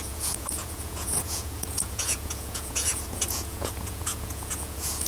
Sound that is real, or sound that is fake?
fake